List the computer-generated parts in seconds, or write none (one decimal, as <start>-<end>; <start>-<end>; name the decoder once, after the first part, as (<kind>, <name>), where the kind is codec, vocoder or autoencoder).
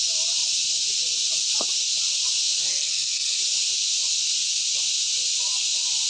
2.7-3.4 (codec, SNAC)